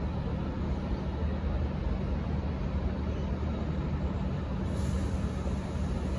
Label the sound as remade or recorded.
recorded